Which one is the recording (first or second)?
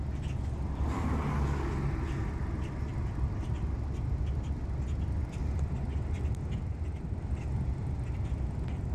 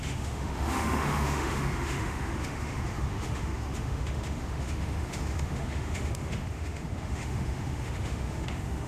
first